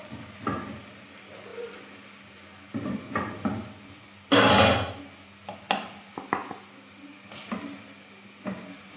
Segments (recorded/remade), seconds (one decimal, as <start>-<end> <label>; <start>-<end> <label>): 0.0-9.0 recorded